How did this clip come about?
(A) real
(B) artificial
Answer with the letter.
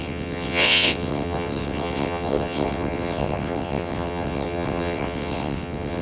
B